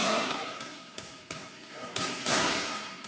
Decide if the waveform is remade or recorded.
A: remade